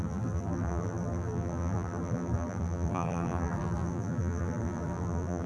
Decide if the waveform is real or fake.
fake